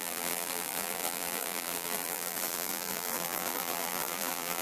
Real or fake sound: fake